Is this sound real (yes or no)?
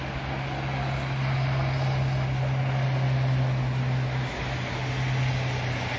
yes